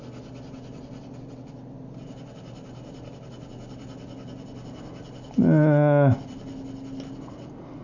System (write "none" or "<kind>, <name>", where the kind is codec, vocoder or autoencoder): none